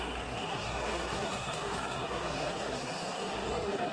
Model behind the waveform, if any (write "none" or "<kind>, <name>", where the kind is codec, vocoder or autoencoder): codec, SNAC